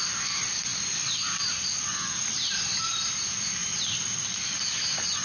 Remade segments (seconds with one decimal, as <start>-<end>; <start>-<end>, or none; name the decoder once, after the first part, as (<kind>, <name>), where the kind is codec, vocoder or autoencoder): none